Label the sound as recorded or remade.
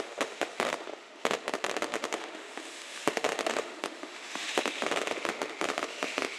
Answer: remade